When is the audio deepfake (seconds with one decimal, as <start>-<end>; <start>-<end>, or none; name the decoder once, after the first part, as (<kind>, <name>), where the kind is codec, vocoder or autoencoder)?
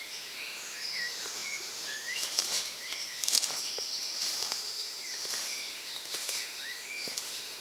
0.0-7.6 (autoencoder, DAC-VAE)